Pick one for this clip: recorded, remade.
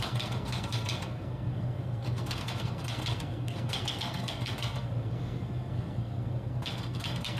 remade